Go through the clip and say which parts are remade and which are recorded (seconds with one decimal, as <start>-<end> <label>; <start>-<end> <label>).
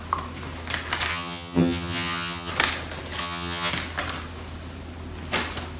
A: 0.0-1.1 recorded; 1.1-2.5 remade; 2.5-3.2 recorded; 3.2-3.7 remade; 3.7-5.8 recorded